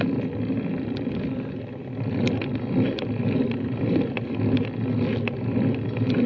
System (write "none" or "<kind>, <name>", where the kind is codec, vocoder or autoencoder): none